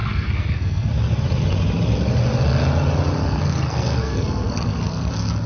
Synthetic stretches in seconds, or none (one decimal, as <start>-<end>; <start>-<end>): 0.0-0.9; 3.2-5.1